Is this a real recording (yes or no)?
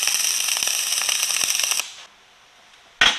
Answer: yes